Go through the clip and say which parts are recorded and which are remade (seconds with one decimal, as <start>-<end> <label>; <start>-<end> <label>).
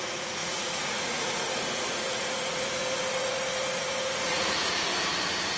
0.0-4.9 remade; 4.9-5.6 recorded